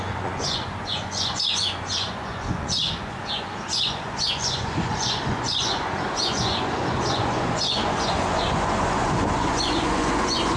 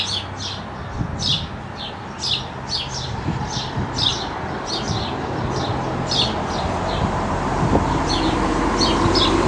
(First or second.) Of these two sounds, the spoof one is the first